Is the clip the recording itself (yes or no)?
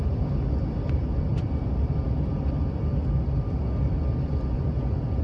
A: yes